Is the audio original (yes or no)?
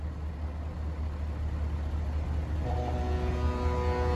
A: yes